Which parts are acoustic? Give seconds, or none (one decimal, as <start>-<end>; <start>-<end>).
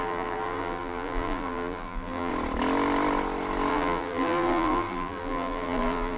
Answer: 2.3-3.7